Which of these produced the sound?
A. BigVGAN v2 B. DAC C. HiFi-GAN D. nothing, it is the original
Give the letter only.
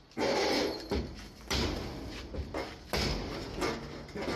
D